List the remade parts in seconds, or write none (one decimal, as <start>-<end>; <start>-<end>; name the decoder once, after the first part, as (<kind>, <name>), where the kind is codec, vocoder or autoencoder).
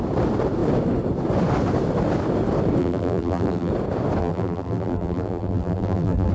2.8-3.7 (vocoder, BigVGAN v2); 4.2-6.3